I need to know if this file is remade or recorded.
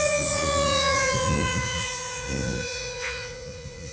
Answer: remade